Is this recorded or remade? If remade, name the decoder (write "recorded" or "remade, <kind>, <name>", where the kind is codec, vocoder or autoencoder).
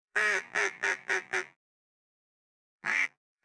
remade, vocoder, BigVGAN v2